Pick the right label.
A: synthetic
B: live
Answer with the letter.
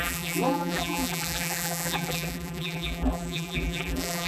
A